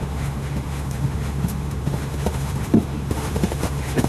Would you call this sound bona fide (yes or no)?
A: no